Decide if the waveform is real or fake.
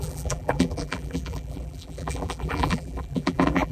fake